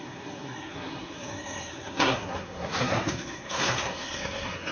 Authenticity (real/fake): fake